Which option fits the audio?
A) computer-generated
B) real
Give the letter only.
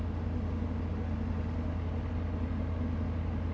B